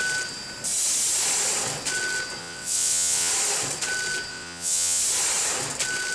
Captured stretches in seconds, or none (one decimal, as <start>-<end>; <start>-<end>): 0.0-2.4; 3.3-4.3; 5.0-6.1